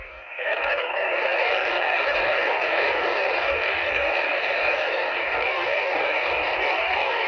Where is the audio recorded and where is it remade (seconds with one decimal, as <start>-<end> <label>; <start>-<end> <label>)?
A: 0.0-7.3 remade